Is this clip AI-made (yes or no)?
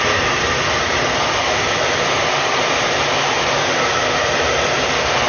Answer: no